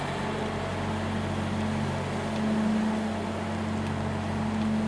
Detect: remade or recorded recorded